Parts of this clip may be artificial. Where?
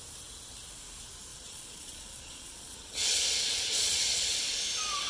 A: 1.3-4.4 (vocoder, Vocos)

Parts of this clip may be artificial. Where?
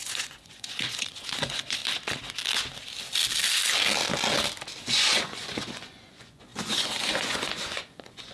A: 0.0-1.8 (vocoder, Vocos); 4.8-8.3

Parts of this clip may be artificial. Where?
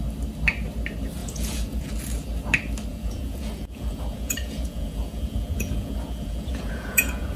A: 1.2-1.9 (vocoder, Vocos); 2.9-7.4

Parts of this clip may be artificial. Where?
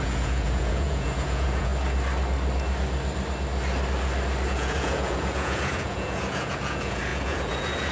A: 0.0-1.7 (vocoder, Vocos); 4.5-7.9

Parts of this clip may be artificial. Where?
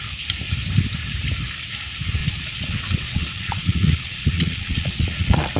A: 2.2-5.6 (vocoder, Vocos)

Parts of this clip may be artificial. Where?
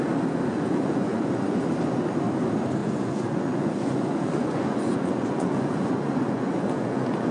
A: 0.5-1.7 (vocoder, Vocos); 2.8-7.3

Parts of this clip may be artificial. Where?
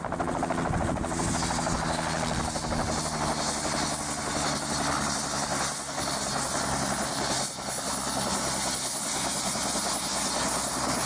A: none